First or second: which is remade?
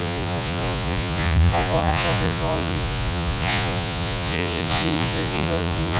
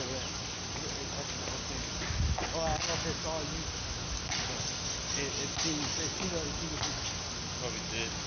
first